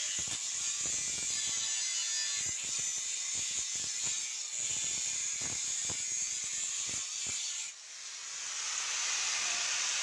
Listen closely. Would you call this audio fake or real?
real